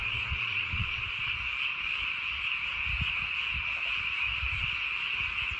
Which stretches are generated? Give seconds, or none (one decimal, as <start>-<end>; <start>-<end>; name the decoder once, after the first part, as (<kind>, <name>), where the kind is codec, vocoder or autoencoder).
0.0-1.4 (vocoder, Vocos)